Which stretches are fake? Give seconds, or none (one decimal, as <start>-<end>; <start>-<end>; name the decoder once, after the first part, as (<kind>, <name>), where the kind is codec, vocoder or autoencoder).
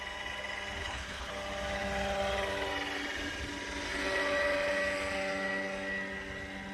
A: 0.8-1.3 (codec, HILCodec)